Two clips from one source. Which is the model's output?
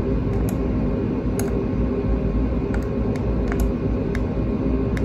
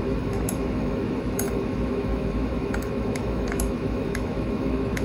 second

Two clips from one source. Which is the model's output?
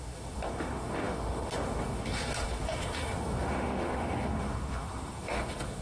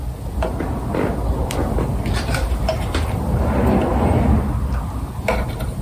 first